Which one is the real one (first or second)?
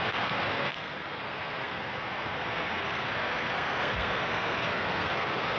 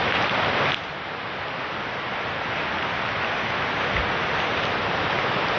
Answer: second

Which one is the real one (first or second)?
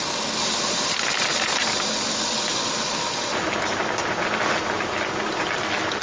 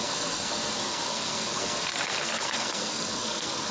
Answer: first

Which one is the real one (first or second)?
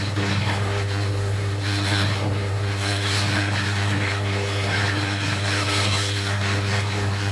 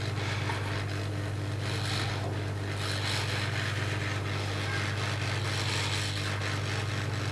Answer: second